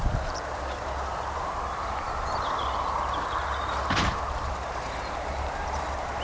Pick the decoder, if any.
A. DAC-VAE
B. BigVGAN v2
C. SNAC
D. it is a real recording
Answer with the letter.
B